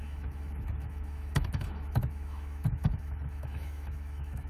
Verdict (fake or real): fake